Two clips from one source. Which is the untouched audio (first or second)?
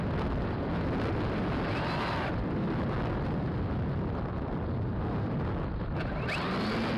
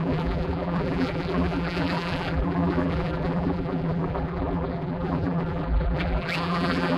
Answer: first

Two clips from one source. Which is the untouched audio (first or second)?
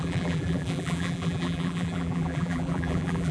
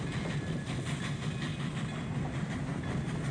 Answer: second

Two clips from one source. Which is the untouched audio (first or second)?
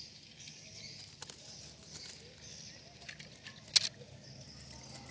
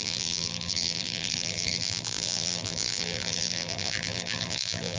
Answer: first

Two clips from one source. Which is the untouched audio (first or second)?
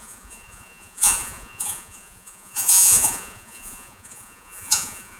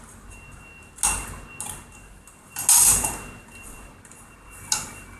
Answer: second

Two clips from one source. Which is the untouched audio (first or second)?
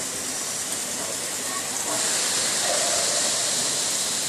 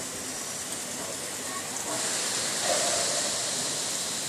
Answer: second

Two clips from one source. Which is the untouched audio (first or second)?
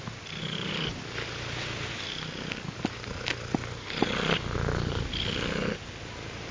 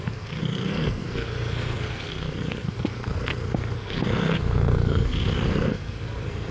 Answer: first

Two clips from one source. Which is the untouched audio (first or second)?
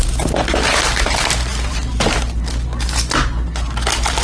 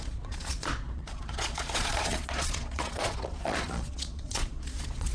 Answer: first